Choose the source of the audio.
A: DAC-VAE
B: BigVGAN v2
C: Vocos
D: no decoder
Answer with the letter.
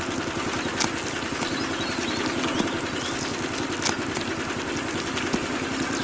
D